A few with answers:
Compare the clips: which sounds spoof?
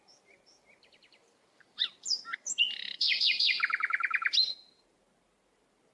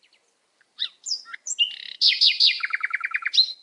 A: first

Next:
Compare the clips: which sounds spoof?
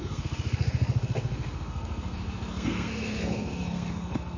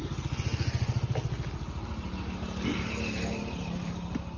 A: first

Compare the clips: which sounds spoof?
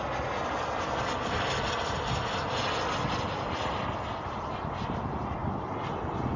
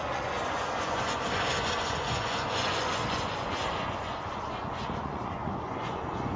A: second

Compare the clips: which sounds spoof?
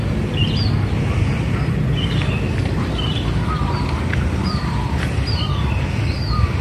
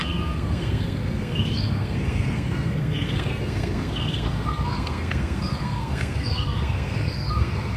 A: second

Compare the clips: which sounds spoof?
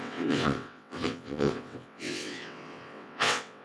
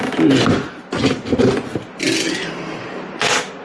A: first